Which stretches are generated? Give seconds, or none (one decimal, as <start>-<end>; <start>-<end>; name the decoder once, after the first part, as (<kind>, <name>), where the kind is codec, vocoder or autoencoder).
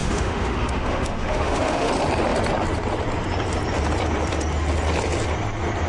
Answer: 0.0-1.9 (autoencoder, DAC-VAE)